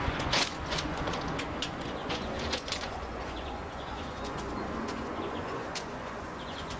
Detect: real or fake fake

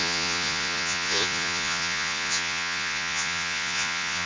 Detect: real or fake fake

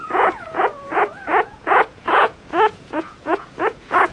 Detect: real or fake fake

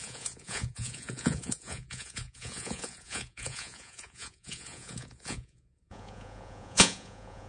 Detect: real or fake fake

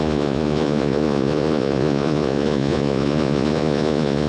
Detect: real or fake fake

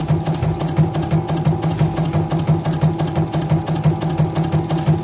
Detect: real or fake real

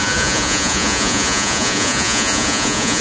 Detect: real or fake fake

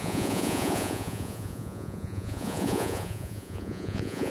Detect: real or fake fake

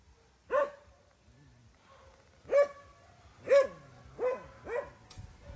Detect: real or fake real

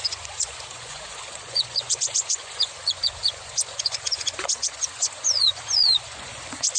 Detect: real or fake fake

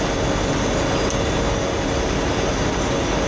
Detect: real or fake real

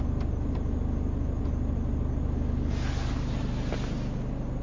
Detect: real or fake real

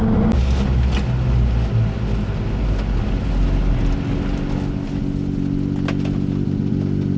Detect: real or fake real